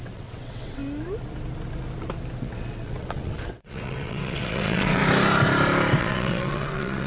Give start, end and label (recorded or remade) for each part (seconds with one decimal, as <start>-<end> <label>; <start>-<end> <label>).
0.0-0.8 remade; 0.8-2.4 recorded; 2.4-5.0 remade; 5.0-6.0 recorded; 6.0-7.1 remade